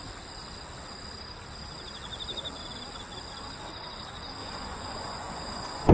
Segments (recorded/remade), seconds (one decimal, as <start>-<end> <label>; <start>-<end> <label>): 0.0-4.4 recorded; 4.4-5.9 remade